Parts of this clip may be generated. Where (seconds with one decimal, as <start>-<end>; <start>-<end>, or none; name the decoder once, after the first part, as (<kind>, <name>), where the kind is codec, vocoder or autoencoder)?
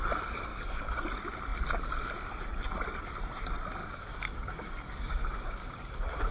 0.5-1.0 (codec, DAC); 3.8-6.3